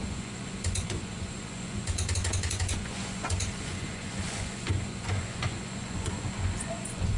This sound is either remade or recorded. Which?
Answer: remade